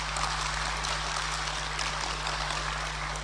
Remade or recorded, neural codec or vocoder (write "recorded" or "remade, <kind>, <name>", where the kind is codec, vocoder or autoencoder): recorded